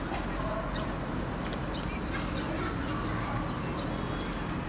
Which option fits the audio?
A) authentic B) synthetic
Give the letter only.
A